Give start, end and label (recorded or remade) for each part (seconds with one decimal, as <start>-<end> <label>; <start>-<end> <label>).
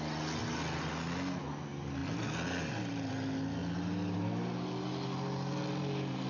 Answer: 0.0-6.3 recorded